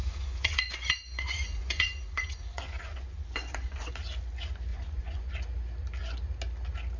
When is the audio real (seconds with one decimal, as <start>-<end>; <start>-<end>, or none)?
3.9-4.7; 5.3-7.0